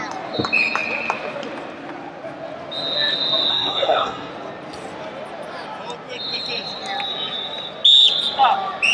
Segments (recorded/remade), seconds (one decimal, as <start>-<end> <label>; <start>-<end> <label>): 0.0-3.5 recorded; 3.5-4.3 remade; 4.3-8.9 recorded